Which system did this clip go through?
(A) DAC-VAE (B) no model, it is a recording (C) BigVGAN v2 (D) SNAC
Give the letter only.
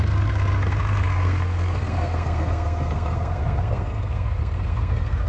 D